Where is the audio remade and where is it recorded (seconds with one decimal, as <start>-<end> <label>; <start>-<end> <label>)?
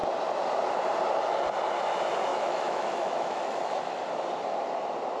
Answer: 0.0-2.3 recorded; 2.3-3.8 remade; 3.8-5.2 recorded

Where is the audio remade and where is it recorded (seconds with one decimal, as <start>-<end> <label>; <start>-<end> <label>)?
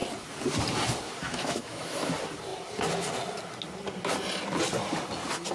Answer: 0.0-1.2 recorded; 1.2-2.1 remade; 2.1-5.5 recorded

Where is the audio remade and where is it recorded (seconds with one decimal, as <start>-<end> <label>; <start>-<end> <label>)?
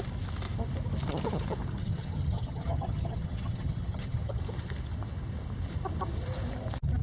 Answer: 0.0-1.8 recorded; 1.8-4.4 remade; 4.4-7.0 recorded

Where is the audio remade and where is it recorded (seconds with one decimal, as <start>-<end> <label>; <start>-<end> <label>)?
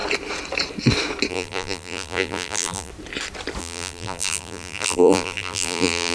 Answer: 0.0-1.3 recorded; 1.3-2.9 remade; 2.9-3.6 recorded; 3.6-6.1 remade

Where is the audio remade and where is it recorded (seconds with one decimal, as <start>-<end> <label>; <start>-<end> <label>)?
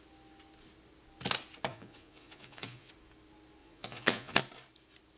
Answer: 0.0-1.7 recorded; 1.7-2.9 remade; 2.9-3.6 recorded; 3.6-4.4 remade; 4.4-5.2 recorded